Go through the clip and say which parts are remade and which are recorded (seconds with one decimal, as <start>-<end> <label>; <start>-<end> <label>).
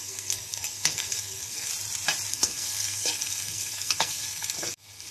0.0-1.7 remade; 1.7-2.3 recorded; 2.3-5.1 remade